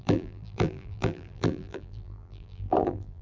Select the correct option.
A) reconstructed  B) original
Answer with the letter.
A